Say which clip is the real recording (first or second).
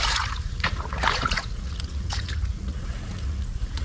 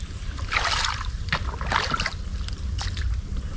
second